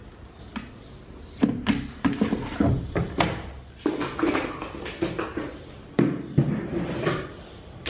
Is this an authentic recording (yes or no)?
yes